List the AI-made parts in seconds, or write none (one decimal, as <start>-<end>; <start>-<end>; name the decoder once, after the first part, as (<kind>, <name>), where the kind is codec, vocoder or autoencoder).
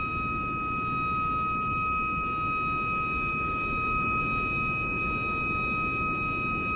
3.3-4.2 (autoencoder, DAC-VAE)